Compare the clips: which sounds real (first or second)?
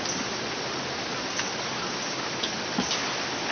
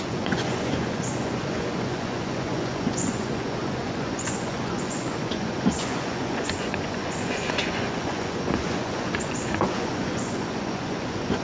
first